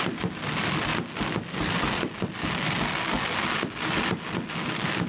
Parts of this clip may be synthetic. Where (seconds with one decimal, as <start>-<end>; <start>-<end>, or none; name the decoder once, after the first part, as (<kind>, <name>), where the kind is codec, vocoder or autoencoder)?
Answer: none